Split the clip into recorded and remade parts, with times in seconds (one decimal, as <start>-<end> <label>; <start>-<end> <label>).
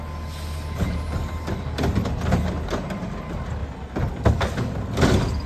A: 0.0-5.5 recorded